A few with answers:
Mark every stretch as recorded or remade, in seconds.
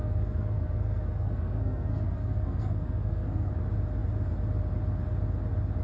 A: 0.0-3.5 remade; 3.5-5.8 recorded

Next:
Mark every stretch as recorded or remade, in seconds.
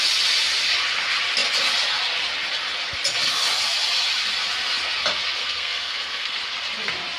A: 0.0-5.4 recorded; 5.4-6.4 remade; 6.4-7.2 recorded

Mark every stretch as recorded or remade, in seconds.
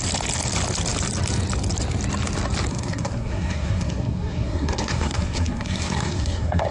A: 0.0-2.7 recorded; 2.7-6.7 remade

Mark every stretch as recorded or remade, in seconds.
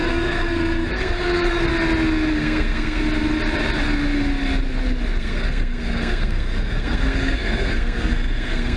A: 0.0-1.7 remade; 1.7-2.3 recorded; 2.3-3.0 remade; 3.0-5.2 recorded; 5.2-8.8 remade